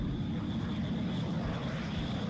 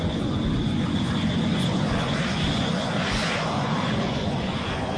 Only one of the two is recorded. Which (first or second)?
first